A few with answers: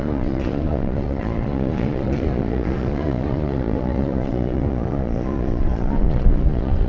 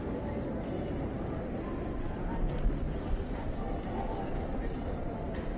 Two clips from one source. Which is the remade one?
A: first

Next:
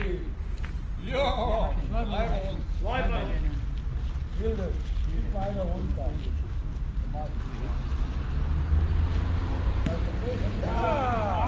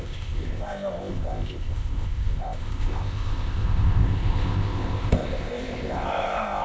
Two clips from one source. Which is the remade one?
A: second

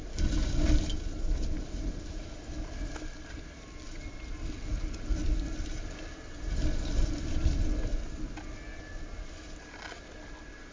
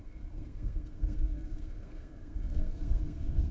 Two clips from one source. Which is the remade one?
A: second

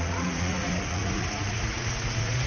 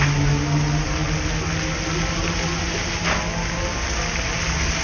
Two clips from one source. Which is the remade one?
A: first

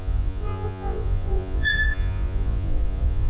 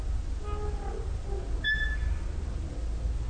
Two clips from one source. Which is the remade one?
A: first